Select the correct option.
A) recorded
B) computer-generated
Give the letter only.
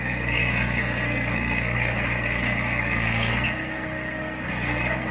B